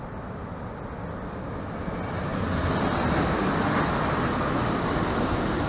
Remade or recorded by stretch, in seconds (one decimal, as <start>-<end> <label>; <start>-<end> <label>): 0.0-5.7 recorded